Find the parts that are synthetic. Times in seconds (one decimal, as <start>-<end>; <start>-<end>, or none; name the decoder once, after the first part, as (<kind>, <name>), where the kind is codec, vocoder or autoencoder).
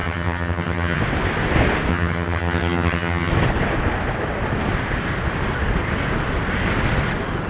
0.0-1.0 (vocoder, HiFi-GAN); 1.9-3.3